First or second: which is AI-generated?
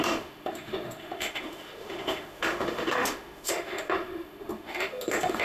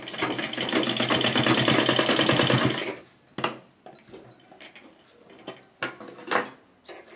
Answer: first